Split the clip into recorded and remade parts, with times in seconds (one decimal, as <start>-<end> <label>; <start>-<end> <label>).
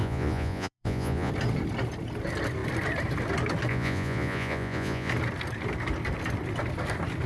0.0-1.3 remade; 1.3-3.7 recorded; 3.7-5.1 remade; 5.1-7.3 recorded